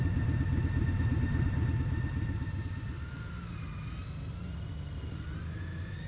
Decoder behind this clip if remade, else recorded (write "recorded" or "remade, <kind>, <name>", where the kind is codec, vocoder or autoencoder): recorded